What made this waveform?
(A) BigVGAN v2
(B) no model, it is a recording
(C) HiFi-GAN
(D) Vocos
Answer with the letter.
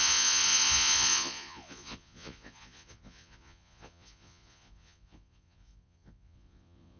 D